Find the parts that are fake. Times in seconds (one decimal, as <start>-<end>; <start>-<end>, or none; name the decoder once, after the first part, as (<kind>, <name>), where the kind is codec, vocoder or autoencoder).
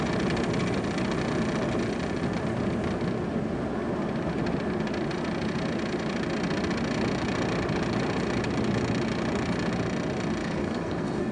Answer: 10.4-11.3 (codec, SNAC)